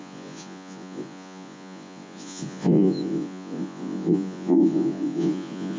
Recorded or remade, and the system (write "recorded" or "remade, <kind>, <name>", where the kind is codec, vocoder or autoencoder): remade, vocoder, Vocos